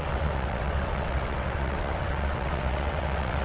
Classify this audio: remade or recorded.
remade